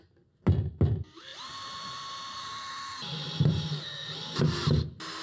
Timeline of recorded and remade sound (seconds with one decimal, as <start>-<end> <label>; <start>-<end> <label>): 0.0-1.3 recorded; 1.3-4.4 remade; 4.4-5.2 recorded